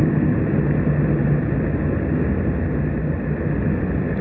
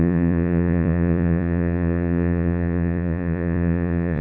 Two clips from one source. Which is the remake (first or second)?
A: second